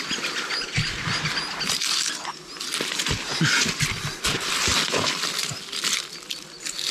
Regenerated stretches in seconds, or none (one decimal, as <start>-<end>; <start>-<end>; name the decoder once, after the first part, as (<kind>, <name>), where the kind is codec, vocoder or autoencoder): none

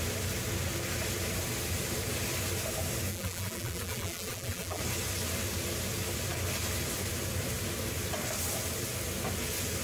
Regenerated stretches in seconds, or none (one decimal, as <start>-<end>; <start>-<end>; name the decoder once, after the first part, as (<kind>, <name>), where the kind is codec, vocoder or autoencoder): 3.1-4.8 (vocoder, BigVGAN v2)

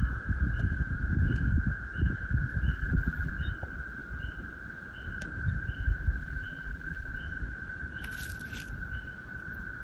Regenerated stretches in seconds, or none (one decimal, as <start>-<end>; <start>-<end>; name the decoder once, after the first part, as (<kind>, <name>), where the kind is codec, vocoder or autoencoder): 2.7-3.3 (vocoder, BigVGAN v2); 6.2-7.1

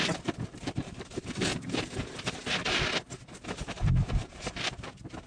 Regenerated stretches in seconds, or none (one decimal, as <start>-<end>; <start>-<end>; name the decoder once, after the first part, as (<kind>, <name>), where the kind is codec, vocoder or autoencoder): 0.0-2.4 (vocoder, BigVGAN v2); 3.5-5.3

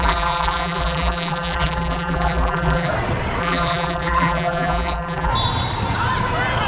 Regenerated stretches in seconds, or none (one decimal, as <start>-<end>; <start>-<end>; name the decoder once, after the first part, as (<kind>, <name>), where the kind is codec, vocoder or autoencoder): 0.0-2.9 (vocoder, BigVGAN v2); 3.4-5.3